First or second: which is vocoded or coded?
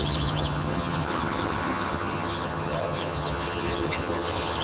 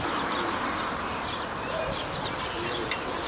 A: first